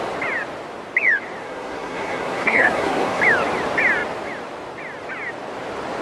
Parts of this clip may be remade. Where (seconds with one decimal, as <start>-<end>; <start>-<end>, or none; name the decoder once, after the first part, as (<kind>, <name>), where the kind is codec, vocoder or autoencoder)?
1.4-3.2 (codec, SNAC)